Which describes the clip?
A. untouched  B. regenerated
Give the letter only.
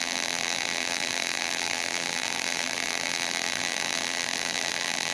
B